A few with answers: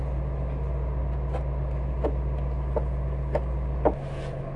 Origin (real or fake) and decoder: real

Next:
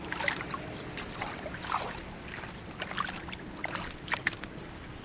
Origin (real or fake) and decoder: real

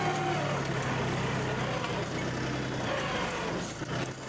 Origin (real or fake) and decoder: real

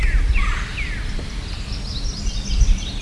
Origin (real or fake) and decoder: real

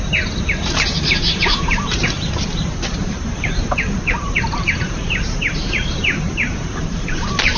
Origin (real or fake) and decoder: fake, vocoder, BigVGAN v2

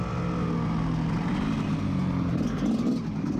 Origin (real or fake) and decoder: real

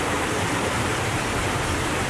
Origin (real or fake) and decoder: real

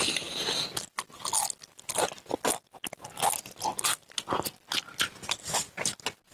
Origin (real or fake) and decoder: real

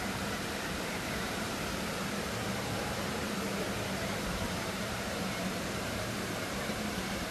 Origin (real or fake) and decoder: fake, vocoder, BigVGAN v2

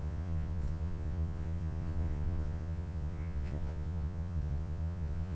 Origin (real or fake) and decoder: fake, vocoder, Vocos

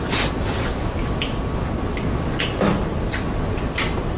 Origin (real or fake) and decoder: real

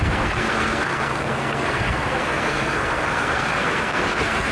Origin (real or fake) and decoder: fake, codec, SNAC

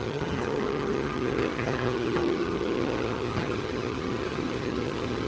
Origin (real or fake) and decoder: fake, vocoder, HiFi-GAN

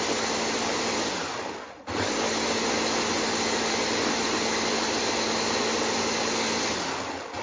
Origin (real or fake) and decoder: real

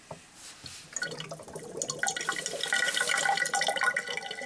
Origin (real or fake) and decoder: real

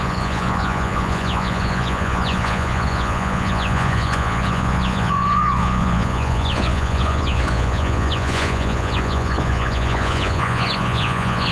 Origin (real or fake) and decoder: fake, vocoder, Vocos